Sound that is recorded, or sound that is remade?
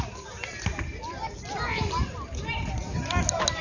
recorded